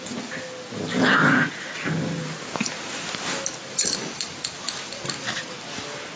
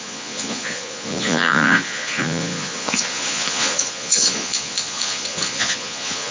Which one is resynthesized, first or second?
second